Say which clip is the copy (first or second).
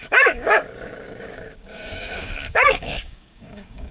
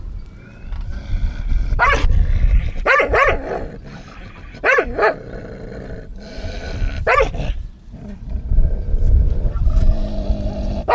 first